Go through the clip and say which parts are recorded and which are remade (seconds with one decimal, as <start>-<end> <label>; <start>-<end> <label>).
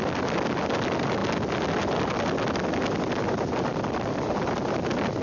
0.0-5.2 recorded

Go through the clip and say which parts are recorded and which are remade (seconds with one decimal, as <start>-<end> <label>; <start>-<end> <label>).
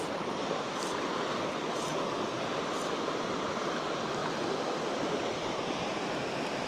0.0-4.2 remade; 4.2-5.4 recorded; 5.4-6.7 remade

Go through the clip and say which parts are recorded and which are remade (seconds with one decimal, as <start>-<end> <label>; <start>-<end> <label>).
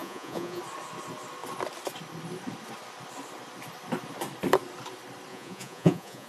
0.0-0.6 remade; 0.6-5.3 recorded; 5.3-6.3 remade